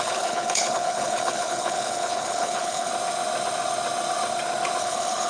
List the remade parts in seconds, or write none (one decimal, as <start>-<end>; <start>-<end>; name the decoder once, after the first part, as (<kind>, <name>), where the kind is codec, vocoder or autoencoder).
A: 0.0-2.9 (codec, HILCodec); 4.8-5.3